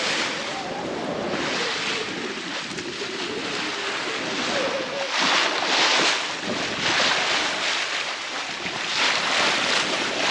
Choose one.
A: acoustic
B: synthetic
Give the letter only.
A